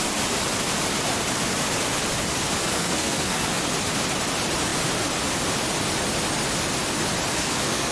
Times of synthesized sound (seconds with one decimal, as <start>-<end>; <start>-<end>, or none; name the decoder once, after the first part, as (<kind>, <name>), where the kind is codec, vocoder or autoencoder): 2.6-3.6 (codec, SNAC); 7.3-7.9